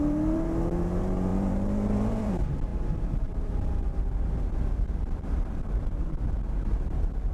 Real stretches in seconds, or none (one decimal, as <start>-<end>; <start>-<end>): none